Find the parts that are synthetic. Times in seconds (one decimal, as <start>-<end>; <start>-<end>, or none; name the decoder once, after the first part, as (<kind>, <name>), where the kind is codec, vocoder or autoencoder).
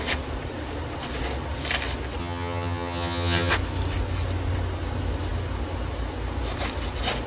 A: 2.2-3.5 (vocoder, HiFi-GAN)